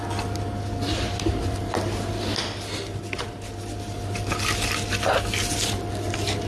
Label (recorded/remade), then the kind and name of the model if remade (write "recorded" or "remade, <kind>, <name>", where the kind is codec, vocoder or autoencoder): recorded